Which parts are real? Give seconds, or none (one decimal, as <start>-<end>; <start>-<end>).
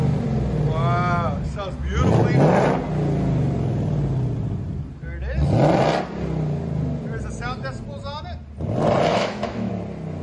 0.0-9.1; 9.7-10.2